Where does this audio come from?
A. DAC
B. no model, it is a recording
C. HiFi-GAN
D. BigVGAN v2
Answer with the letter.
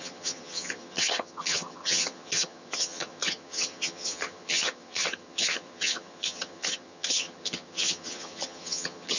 C